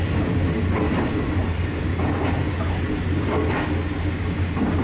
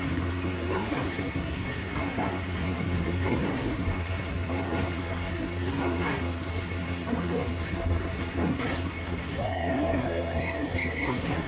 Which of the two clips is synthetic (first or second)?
second